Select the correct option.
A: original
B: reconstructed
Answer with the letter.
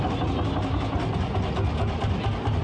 A